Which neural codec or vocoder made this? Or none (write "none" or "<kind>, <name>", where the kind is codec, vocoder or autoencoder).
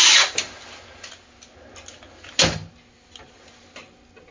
none